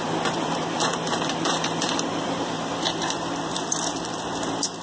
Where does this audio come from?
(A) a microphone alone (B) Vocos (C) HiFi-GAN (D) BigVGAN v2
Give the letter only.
D